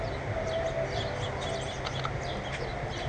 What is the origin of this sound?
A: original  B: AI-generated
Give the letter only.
A